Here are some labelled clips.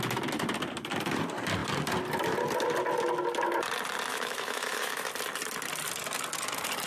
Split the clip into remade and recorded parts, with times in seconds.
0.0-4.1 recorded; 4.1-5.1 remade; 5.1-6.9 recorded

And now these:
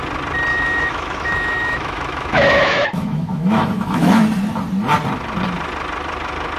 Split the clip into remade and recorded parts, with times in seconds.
0.0-0.5 recorded; 0.5-4.2 remade; 4.2-6.6 recorded

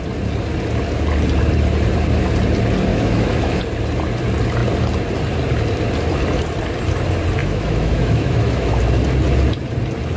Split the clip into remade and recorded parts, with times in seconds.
0.0-2.9 recorded; 2.9-3.6 remade; 3.6-7.4 recorded; 7.4-8.8 remade; 8.8-10.2 recorded

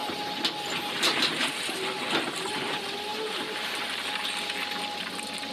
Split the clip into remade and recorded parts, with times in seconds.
0.0-5.5 recorded

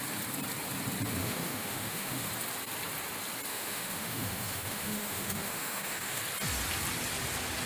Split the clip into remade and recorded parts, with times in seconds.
0.0-1.2 recorded; 1.2-2.3 remade; 2.3-3.5 recorded; 3.5-6.2 remade; 6.2-7.7 recorded

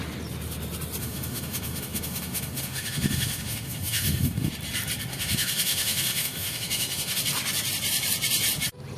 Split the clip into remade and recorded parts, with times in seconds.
0.0-1.0 recorded; 1.0-4.5 remade; 4.5-5.1 recorded; 5.1-7.2 remade; 7.2-9.0 recorded